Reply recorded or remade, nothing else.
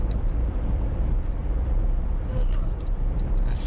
remade